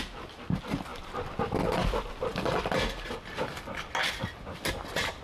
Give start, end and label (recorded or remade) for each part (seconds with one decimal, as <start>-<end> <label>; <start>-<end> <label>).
0.0-5.2 recorded